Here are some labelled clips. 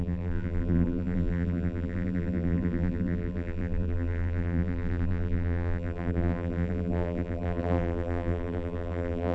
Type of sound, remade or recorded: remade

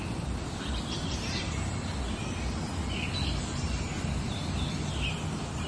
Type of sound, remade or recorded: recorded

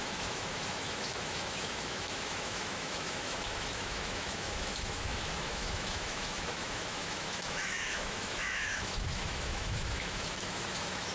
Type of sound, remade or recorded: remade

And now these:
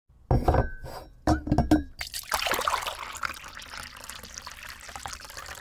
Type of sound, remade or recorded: recorded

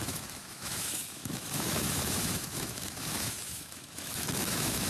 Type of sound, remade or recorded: remade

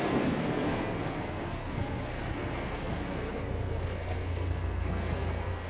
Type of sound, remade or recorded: remade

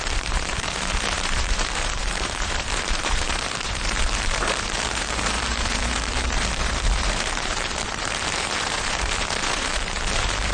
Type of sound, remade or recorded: remade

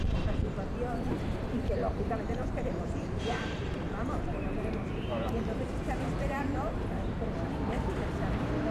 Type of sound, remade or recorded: remade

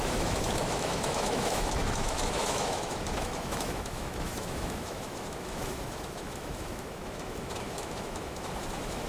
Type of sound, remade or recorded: remade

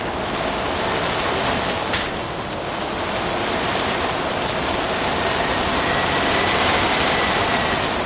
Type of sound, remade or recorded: recorded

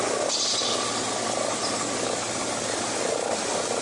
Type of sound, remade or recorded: recorded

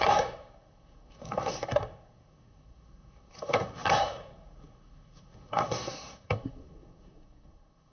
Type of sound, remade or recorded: remade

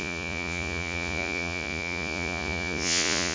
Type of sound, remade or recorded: remade